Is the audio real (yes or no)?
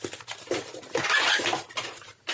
yes